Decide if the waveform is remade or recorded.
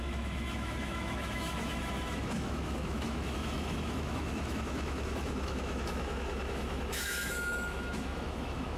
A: remade